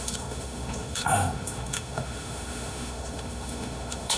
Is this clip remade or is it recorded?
remade